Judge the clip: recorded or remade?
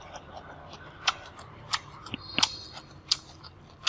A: recorded